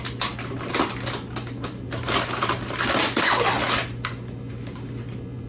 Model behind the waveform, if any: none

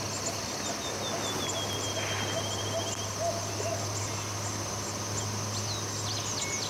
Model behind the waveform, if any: none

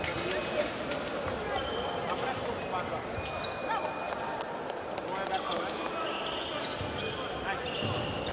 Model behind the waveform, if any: none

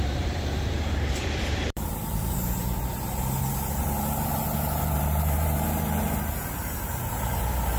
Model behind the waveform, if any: vocoder, BigVGAN v2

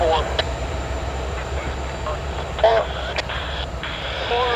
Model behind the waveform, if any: vocoder, BigVGAN v2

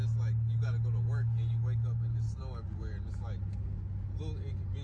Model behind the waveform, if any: none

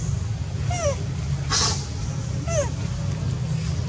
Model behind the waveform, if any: none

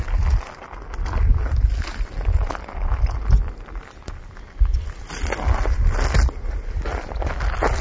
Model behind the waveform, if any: none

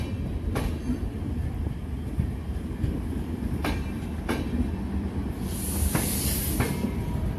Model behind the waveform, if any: vocoder, BigVGAN v2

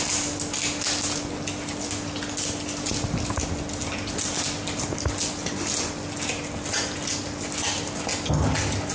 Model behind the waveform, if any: none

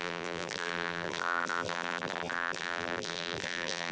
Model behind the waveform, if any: vocoder, BigVGAN v2